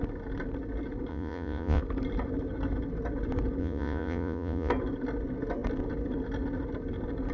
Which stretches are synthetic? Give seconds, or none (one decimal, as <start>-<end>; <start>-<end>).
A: 1.1-1.8; 3.6-4.7